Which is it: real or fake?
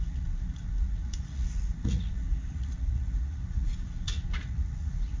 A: fake